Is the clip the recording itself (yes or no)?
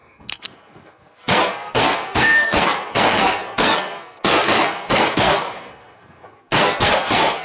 no